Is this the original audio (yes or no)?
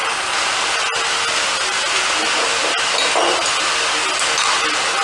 yes